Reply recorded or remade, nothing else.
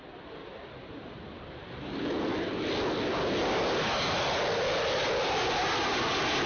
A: recorded